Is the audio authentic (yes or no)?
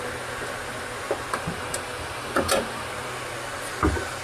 yes